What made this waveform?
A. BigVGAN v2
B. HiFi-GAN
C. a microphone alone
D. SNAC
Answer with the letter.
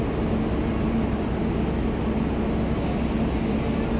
C